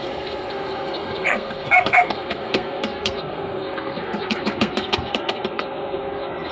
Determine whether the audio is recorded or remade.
remade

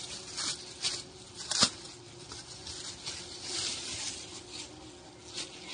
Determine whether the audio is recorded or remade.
recorded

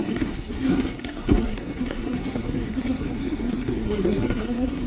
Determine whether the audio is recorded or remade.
remade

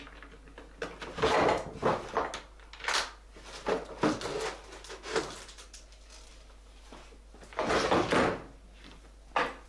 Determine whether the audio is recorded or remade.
recorded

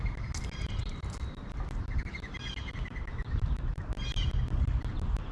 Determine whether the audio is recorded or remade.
recorded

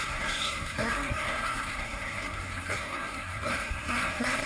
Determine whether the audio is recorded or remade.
remade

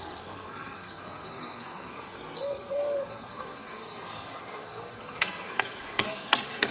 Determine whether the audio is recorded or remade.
remade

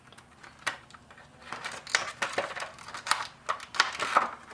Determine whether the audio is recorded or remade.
recorded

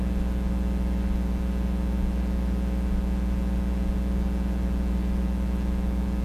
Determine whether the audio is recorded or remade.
recorded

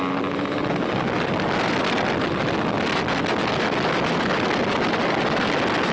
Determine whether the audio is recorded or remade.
recorded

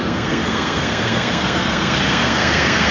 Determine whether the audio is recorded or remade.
remade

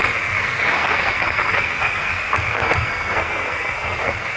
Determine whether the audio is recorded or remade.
remade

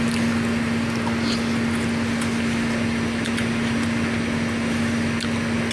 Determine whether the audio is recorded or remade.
recorded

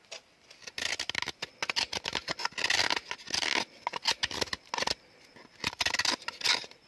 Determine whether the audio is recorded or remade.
recorded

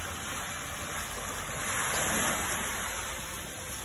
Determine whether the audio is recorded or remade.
recorded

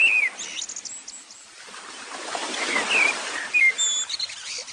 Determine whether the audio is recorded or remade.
recorded